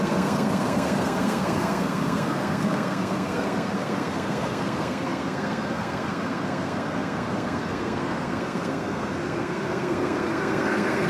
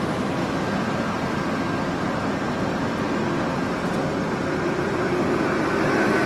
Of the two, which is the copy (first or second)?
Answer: first